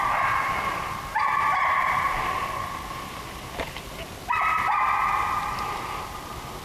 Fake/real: real